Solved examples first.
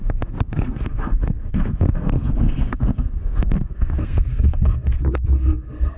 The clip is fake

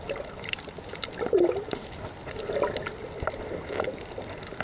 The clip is real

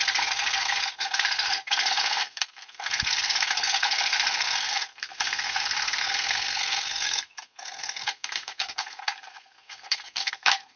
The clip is fake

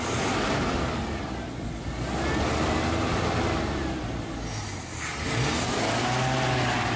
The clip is real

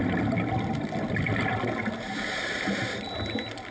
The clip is real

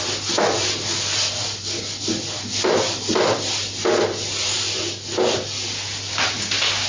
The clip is real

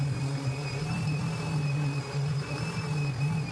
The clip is fake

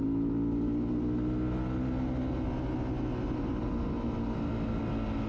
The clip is real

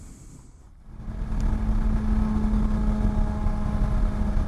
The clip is real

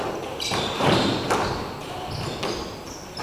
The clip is real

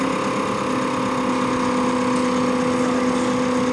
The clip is real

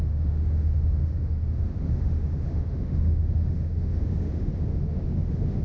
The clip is fake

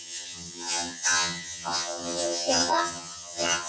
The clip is fake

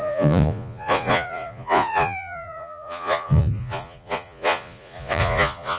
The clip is fake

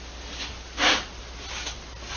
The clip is real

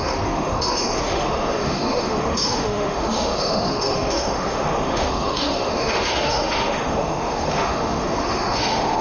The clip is fake